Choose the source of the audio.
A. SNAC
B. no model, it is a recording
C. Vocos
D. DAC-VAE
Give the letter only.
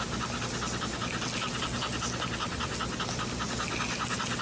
B